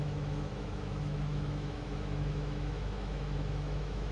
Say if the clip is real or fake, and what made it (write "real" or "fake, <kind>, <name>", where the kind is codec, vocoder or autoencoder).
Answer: fake, autoencoder, DAC-VAE